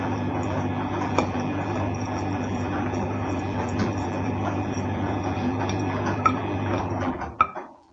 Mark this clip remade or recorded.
remade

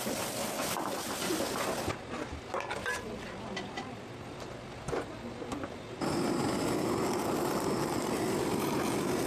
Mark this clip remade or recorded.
recorded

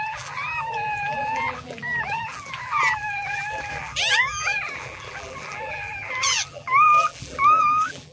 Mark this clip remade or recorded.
remade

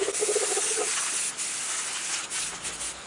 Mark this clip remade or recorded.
recorded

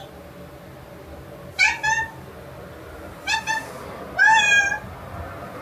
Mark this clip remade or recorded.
recorded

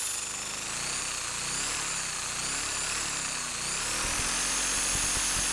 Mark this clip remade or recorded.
recorded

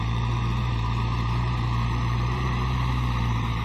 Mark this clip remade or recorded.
remade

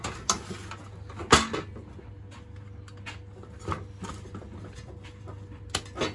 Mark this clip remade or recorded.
recorded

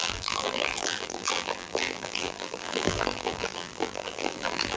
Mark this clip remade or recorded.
remade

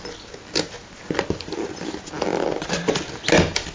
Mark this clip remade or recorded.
recorded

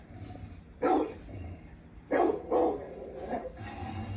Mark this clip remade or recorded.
recorded